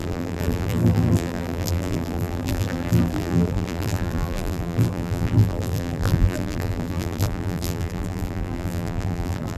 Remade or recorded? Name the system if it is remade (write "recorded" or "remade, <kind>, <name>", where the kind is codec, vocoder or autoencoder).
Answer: remade, vocoder, BigVGAN v2